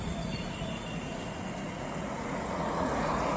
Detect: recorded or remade remade